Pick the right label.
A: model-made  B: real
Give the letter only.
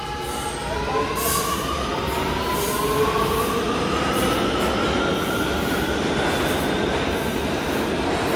B